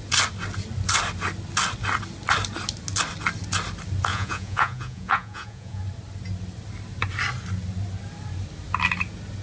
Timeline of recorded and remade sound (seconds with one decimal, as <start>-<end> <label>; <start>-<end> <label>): 0.0-4.1 recorded; 4.1-5.8 remade; 5.8-9.4 recorded